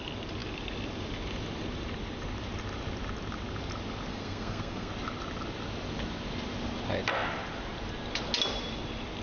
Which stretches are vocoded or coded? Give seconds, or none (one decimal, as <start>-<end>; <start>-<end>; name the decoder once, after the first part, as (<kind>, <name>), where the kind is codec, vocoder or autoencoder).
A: 4.1-4.9 (codec, SNAC)